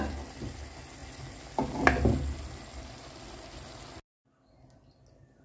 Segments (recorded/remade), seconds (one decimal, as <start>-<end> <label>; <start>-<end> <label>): 0.0-5.4 recorded